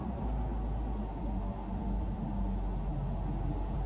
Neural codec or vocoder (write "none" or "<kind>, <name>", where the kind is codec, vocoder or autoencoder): none